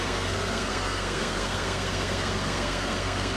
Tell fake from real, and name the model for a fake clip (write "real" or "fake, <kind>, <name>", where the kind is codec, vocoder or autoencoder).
fake, codec, SNAC